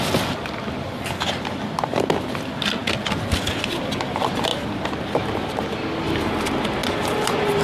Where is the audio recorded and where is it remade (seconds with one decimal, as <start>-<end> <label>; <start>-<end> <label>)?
0.0-7.6 recorded